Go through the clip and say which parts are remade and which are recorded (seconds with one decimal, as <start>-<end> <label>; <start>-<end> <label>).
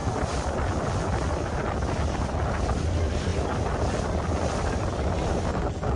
0.0-0.9 remade; 0.9-3.3 recorded; 3.3-5.6 remade; 5.6-6.0 recorded